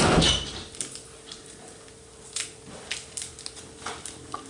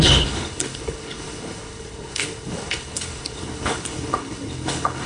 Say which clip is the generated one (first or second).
second